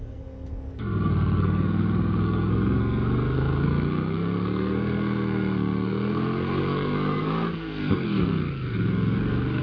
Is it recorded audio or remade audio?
remade